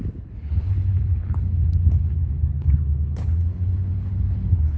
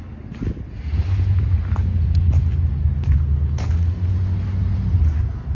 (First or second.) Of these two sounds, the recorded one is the second